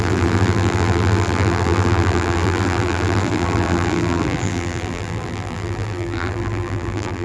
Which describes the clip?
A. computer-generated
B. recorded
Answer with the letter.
A